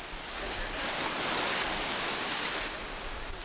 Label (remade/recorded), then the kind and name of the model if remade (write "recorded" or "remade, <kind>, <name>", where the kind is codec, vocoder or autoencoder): recorded